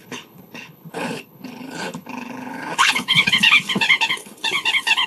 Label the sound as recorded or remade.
remade